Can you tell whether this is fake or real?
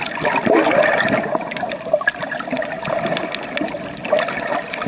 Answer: real